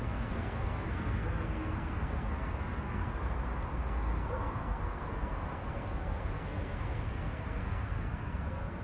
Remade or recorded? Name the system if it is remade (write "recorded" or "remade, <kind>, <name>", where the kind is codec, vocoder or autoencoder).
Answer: remade, codec, SNAC